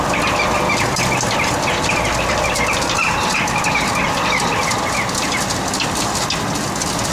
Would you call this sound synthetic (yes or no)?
no